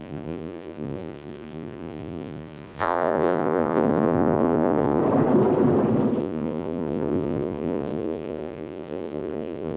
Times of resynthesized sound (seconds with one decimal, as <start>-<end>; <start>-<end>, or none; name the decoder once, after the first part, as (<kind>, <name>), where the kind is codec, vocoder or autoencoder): 0.0-5.0 (vocoder, Vocos); 6.2-9.8